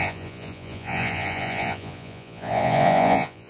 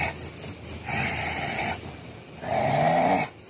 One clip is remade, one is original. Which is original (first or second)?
second